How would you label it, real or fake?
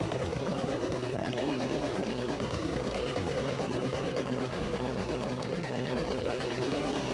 fake